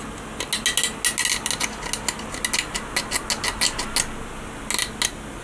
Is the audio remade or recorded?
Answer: recorded